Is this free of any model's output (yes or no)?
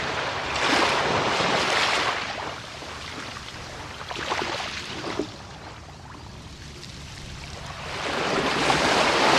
no